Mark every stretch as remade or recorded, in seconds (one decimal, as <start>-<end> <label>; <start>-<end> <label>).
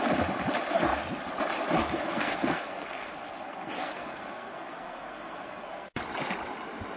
0.0-1.8 recorded; 1.8-6.0 remade; 6.0-7.0 recorded